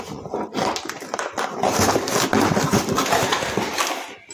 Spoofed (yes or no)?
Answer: no